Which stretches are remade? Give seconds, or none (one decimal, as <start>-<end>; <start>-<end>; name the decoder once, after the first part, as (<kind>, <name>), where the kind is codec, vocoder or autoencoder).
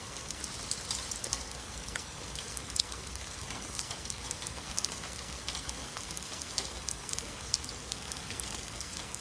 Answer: 0.0-0.4 (codec, SNAC); 1.2-9.2